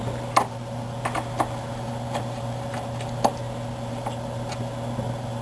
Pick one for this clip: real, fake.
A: real